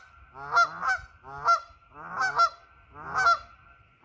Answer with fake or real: real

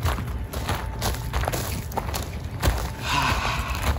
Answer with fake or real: real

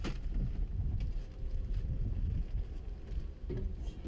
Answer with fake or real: real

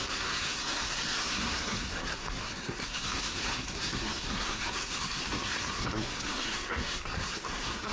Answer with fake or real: fake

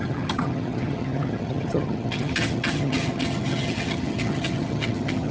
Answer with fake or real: fake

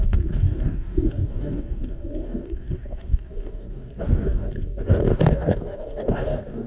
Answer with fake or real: fake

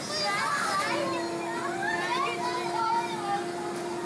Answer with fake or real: real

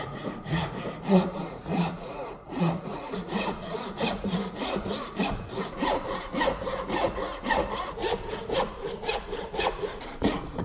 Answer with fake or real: fake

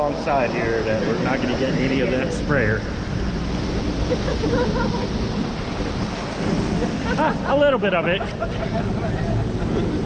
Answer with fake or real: real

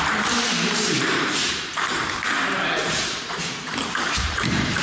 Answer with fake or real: fake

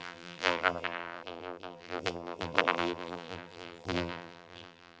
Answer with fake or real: fake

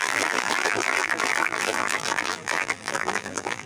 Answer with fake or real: fake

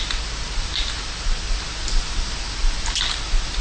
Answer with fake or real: real